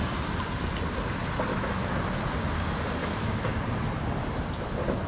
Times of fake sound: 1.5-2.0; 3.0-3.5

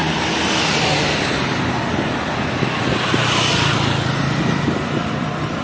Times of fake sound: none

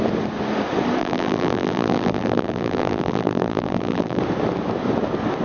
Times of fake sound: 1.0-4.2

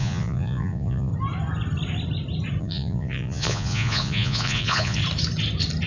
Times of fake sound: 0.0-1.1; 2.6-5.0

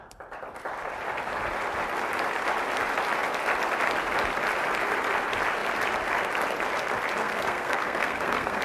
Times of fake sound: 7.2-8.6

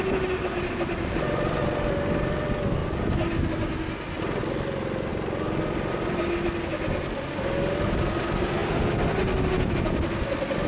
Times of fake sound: none

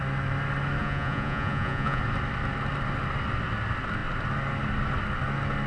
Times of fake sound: 0.8-2.0